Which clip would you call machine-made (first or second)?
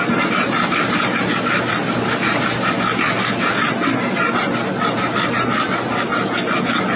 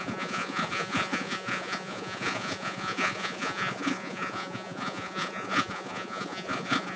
second